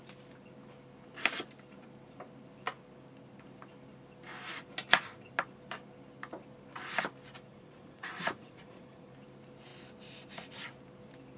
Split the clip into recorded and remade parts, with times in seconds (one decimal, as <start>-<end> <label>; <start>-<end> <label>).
0.0-7.5 recorded; 7.5-9.1 remade; 9.1-11.4 recorded